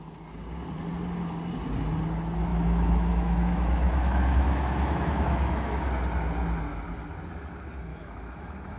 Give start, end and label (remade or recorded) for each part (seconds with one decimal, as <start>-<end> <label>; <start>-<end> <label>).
0.0-2.5 recorded; 2.5-5.9 remade; 5.9-7.9 recorded; 7.9-8.8 remade